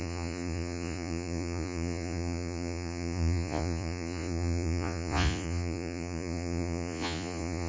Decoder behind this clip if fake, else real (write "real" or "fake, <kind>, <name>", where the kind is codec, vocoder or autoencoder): fake, vocoder, Vocos